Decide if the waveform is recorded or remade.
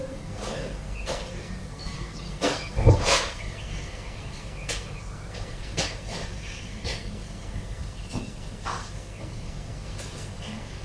remade